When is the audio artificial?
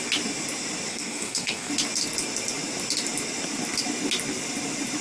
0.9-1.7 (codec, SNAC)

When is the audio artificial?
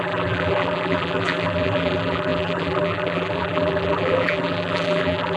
0.0-5.4 (vocoder, BigVGAN v2)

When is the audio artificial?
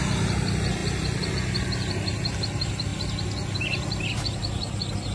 none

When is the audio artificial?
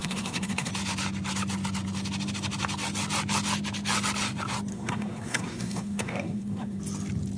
0.0-0.7 (codec, SNAC); 4.7-6.8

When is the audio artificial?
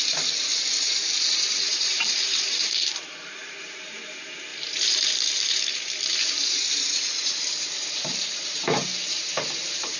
0.0-10.0 (vocoder, BigVGAN v2)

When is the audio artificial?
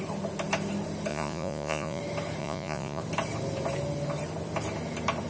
1.1-2.0 (vocoder, Vocos); 2.4-3.0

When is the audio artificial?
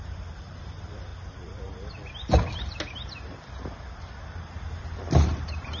0.0-1.1 (vocoder, BigVGAN v2); 4.6-5.8